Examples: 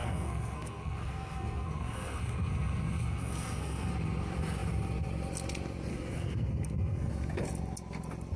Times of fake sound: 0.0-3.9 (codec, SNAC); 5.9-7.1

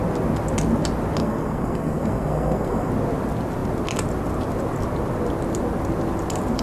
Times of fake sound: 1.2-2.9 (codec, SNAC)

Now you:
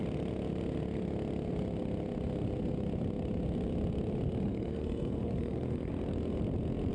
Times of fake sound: 4.5-5.9 (codec, SNAC)

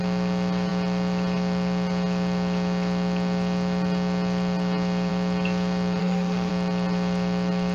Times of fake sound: 6.0-6.5 (codec, SNAC)

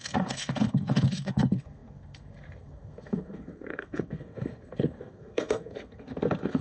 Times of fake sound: 0.0-6.6 (codec, SNAC)